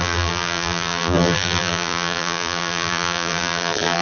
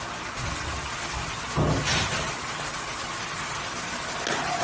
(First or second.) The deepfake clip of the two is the first